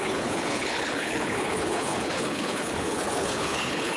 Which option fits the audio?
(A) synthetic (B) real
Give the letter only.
A